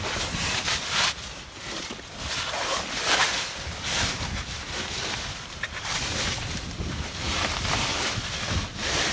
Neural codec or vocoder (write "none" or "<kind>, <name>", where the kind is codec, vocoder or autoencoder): vocoder, BigVGAN v2